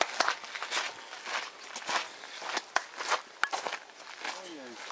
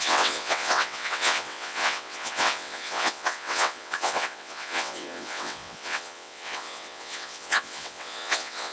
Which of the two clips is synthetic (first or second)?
second